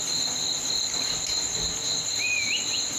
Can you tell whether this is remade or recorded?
recorded